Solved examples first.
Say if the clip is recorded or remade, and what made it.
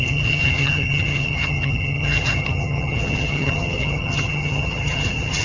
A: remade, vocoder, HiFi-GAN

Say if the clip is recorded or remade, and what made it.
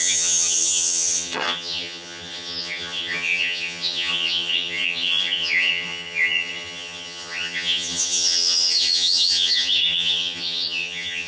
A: remade, vocoder, HiFi-GAN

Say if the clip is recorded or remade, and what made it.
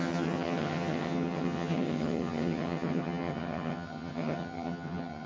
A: remade, vocoder, HiFi-GAN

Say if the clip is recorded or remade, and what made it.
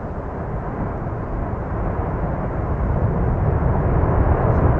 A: recorded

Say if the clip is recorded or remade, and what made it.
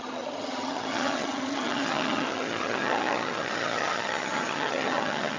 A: remade, vocoder, HiFi-GAN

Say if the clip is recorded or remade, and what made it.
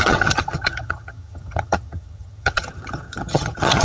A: remade, vocoder, HiFi-GAN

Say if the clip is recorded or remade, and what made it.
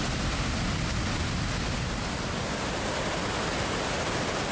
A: recorded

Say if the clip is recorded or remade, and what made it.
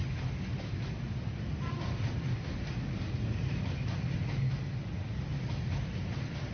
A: recorded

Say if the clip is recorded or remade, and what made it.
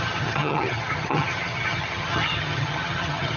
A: remade, vocoder, HiFi-GAN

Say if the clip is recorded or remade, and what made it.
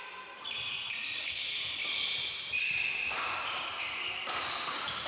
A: recorded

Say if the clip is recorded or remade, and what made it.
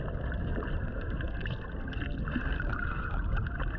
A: recorded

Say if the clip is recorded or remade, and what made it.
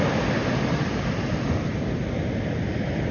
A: recorded